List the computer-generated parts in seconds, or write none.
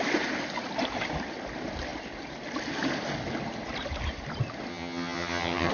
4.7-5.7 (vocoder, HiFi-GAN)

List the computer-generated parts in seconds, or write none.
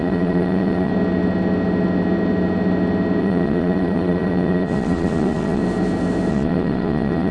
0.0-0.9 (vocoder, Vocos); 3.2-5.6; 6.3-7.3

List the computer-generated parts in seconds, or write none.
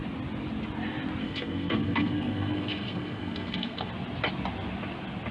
1.2-3.9 (codec, SNAC)